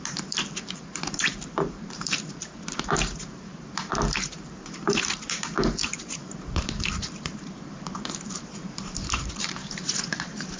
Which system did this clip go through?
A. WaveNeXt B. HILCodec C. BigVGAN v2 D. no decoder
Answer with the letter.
C